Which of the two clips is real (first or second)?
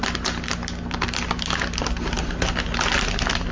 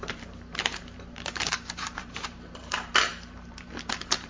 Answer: first